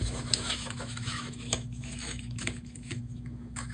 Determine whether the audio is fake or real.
fake